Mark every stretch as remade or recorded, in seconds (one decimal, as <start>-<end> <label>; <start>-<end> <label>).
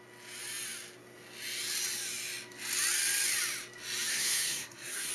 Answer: 0.0-4.1 recorded; 4.1-5.1 remade